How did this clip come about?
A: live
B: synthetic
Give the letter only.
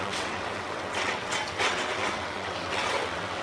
B